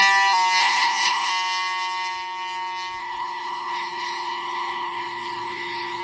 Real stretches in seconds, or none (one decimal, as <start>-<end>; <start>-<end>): 0.0-0.6; 1.3-3.0